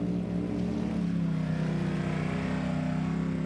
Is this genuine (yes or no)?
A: yes